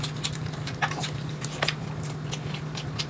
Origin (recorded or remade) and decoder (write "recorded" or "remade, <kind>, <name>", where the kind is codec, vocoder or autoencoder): recorded